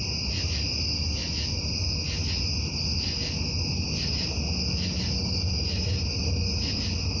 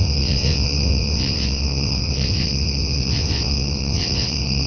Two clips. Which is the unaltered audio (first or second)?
first